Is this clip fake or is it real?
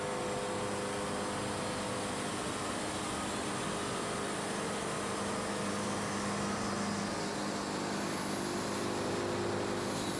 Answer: real